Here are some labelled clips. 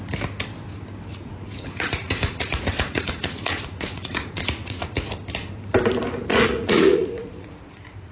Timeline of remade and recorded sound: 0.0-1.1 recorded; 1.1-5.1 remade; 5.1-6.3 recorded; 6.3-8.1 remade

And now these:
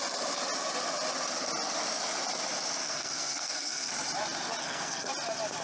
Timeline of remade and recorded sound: 0.0-2.8 recorded; 2.8-3.9 remade; 3.9-4.6 recorded; 4.6-5.1 remade; 5.1-5.6 recorded

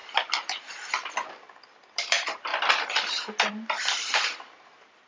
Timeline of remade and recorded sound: 0.0-2.5 remade; 2.5-3.5 recorded; 3.5-5.1 remade

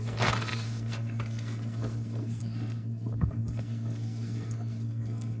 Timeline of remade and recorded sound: 0.0-5.4 remade